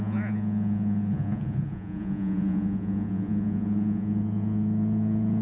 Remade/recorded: remade